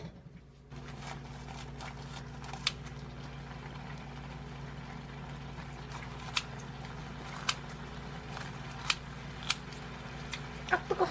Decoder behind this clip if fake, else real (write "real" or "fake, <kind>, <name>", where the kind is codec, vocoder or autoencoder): real